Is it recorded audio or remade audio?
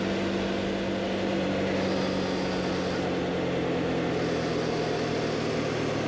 recorded